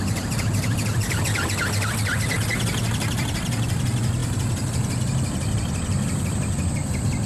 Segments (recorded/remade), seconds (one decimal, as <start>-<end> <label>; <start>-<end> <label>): 0.0-7.3 remade